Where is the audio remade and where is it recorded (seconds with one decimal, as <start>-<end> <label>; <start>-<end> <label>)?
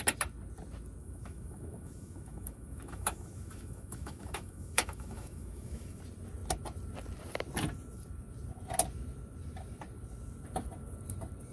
0.0-1.0 recorded; 1.0-6.0 remade; 6.0-11.5 recorded